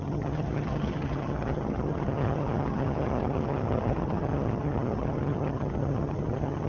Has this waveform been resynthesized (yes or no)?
yes